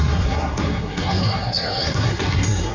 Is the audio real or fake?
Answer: fake